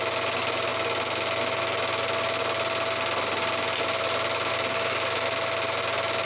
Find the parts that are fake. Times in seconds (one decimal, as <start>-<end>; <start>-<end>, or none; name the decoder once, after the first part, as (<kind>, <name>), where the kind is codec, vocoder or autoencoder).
none